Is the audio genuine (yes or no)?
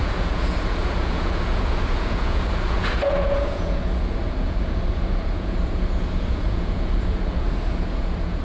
no